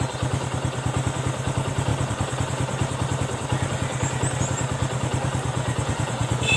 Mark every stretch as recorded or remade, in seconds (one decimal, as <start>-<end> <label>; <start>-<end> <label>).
0.0-5.5 recorded; 5.5-6.6 remade